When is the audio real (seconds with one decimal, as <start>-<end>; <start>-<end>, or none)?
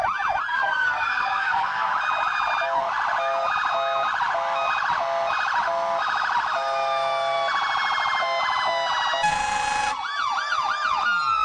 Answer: 0.0-0.5; 1.9-11.4